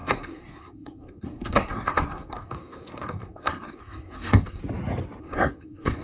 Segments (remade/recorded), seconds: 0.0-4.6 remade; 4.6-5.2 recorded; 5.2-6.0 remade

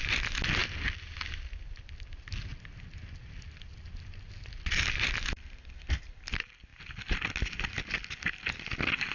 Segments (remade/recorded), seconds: 0.0-9.1 recorded

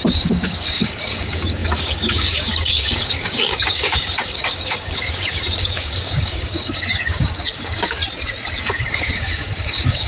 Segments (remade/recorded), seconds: 0.0-8.0 remade; 8.0-8.6 recorded; 8.6-10.1 remade

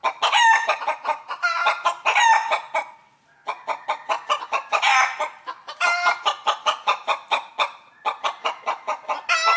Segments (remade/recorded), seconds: 0.0-9.6 recorded

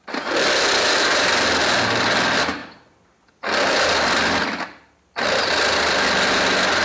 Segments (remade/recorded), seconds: 0.0-6.8 recorded